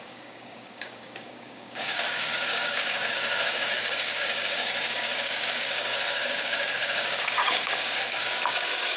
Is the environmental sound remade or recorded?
remade